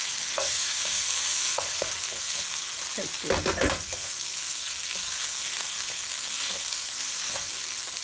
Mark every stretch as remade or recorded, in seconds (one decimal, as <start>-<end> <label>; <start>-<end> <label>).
0.0-2.8 remade; 2.8-3.4 recorded; 3.4-8.0 remade